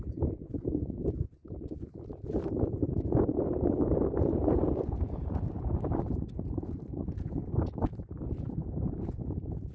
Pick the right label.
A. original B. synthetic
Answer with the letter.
B